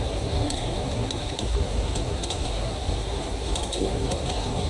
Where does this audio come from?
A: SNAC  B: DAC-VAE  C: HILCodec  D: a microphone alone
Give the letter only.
A